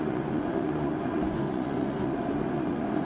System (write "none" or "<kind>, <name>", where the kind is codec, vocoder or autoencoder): vocoder, Vocos